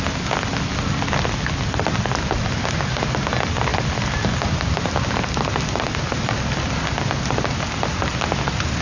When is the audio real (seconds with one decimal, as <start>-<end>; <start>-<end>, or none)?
0.0-8.8